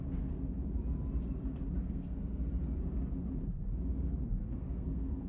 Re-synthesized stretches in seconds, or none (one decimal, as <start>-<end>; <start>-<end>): 1.8-2.5; 4.4-5.3